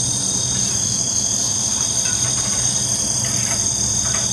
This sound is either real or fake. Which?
real